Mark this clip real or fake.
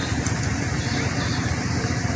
fake